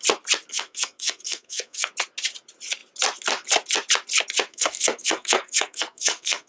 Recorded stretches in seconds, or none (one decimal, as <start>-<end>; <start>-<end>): 0.0-0.5; 1.9-4.5